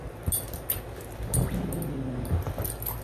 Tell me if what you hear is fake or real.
real